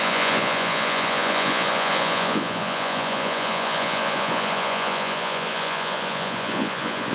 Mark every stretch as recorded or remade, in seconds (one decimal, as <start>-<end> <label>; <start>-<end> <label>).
0.0-7.1 remade